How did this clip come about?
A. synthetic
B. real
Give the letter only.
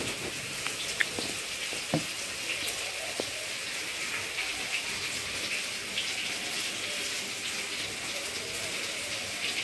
B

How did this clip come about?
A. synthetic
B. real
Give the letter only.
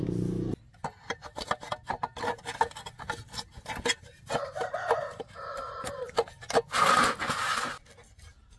B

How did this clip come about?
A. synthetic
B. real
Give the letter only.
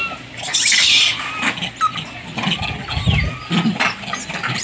B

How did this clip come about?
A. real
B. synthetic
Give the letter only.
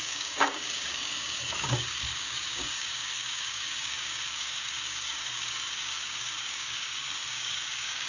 B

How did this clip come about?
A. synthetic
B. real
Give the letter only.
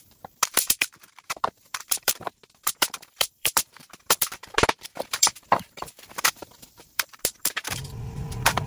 A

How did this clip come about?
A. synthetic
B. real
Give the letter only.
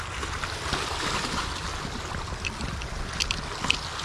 B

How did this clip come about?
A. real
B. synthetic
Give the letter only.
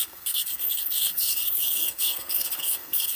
B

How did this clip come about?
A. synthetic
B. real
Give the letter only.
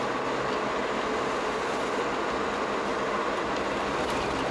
B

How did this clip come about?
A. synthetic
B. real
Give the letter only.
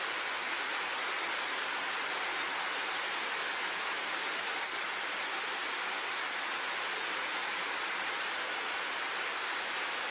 B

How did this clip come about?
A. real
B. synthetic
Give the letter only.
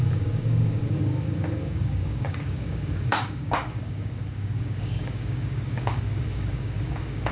B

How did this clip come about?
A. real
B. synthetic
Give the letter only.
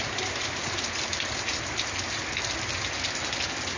A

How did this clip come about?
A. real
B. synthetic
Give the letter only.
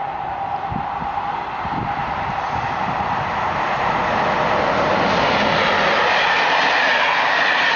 B